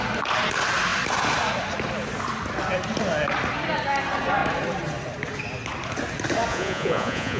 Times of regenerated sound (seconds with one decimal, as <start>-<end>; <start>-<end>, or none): 6.5-7.4